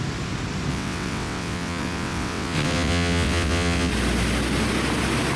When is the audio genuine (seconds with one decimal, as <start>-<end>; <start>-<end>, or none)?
0.0-0.7; 3.9-5.4